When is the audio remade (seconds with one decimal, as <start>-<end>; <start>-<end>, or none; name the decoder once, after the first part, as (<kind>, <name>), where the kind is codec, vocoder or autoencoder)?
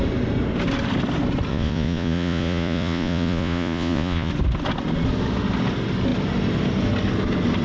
1.5-4.3 (vocoder, Vocos)